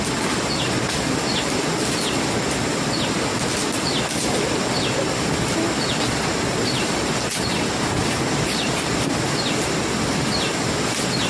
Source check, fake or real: real